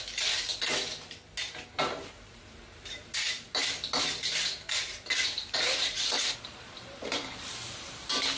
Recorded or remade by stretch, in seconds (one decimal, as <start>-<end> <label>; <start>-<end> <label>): 0.0-0.5 remade; 0.5-1.4 recorded; 1.4-3.6 remade; 3.6-4.7 recorded; 4.7-8.4 remade